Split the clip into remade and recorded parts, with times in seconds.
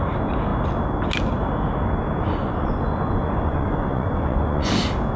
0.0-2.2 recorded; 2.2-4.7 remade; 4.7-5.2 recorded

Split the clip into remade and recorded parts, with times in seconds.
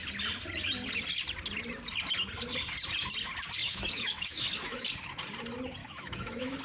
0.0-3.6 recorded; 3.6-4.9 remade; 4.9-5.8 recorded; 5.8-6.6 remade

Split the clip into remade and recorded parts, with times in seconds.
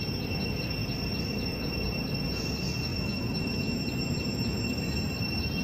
0.0-2.9 recorded; 2.9-4.7 remade; 4.7-5.6 recorded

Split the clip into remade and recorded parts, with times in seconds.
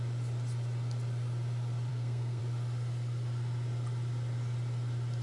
0.0-1.9 recorded; 1.9-2.4 remade; 2.4-5.2 recorded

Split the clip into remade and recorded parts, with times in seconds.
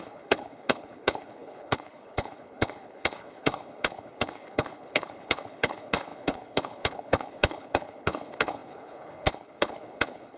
0.0-10.4 remade